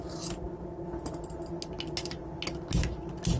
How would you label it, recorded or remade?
recorded